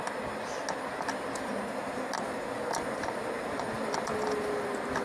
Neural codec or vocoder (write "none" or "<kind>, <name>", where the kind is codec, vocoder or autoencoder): none